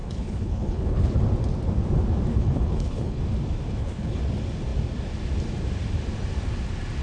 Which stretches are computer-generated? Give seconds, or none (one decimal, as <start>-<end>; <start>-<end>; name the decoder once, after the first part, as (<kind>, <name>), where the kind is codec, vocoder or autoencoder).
0.0-1.2 (codec, HILCodec); 2.3-3.2; 3.7-4.2

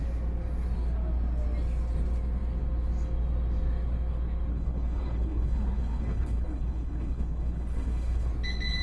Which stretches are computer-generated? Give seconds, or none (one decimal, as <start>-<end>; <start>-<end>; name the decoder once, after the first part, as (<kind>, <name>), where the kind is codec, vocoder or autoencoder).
4.5-8.3 (codec, HILCodec)

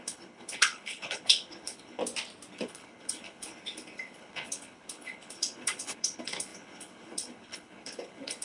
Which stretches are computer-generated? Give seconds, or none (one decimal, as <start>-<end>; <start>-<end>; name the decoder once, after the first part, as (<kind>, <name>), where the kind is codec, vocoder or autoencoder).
0.0-2.0 (codec, HILCodec); 2.5-8.4